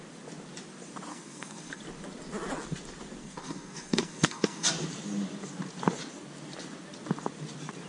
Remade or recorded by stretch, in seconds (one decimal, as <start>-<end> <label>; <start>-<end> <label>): 0.0-1.1 recorded; 1.1-1.8 remade; 1.8-3.2 recorded; 3.2-4.7 remade; 4.7-7.9 recorded